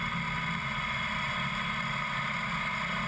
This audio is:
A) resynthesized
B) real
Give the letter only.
B